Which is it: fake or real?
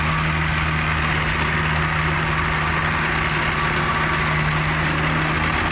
real